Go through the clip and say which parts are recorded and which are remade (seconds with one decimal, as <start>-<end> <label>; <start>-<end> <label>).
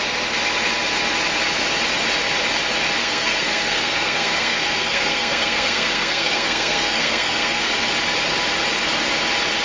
0.0-3.0 recorded; 3.0-7.7 remade; 7.7-9.6 recorded